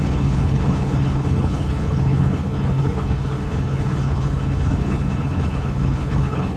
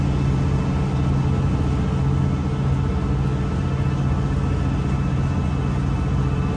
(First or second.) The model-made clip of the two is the first